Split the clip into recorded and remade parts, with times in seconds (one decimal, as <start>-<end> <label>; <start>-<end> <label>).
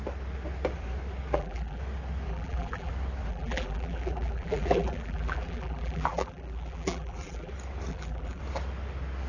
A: 0.0-1.3 recorded; 1.3-1.8 remade; 1.8-2.3 recorded; 2.3-2.9 remade; 2.9-3.3 recorded; 3.3-7.5 remade; 7.5-7.9 recorded; 7.9-8.4 remade; 8.4-9.3 recorded